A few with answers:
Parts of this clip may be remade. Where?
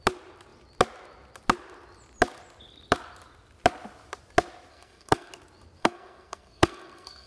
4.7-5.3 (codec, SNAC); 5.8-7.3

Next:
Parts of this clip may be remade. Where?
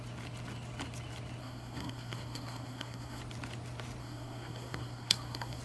1.4-3.2 (codec, SNAC); 4.0-5.6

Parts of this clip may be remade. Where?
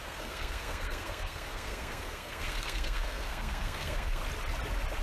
0.0-4.2 (codec, SNAC)